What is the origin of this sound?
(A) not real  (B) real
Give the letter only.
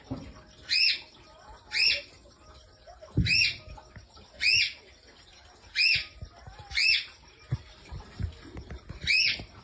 B